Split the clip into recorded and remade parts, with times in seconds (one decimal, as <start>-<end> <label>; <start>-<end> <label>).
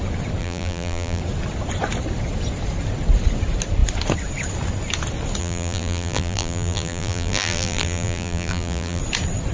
0.0-0.4 recorded; 0.4-1.2 remade; 1.2-5.4 recorded; 5.4-9.0 remade; 9.0-9.5 recorded